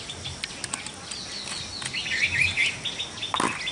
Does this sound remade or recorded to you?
recorded